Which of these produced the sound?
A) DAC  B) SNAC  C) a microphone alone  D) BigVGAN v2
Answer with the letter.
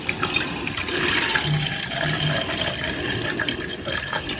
C